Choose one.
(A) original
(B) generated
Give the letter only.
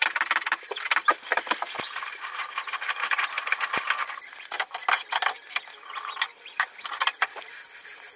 A